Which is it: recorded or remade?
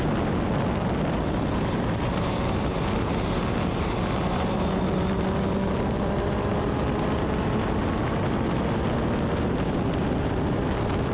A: recorded